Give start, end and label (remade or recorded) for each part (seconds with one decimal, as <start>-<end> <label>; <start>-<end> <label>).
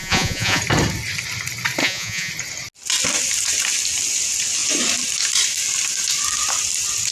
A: 0.0-0.6 remade; 0.6-1.8 recorded; 1.8-2.3 remade; 2.3-7.1 recorded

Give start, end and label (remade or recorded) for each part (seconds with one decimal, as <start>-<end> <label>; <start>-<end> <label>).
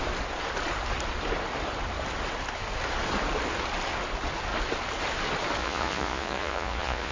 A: 0.0-5.6 recorded; 5.6-7.1 remade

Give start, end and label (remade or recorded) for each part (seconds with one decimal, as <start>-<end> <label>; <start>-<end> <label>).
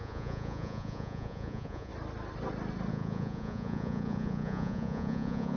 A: 0.0-1.9 remade; 1.9-2.9 recorded; 2.9-5.6 remade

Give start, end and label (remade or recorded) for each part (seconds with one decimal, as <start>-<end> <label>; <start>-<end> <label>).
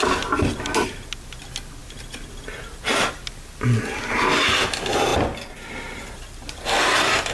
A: 0.0-7.3 recorded